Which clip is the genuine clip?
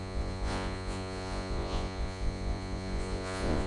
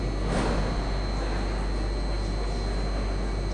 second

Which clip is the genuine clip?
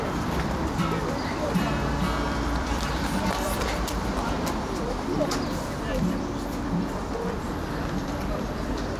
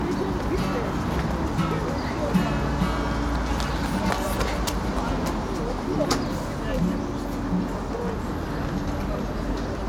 second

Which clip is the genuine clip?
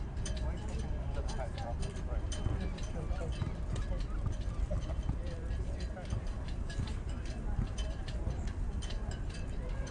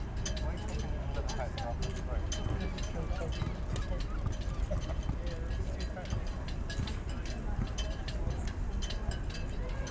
second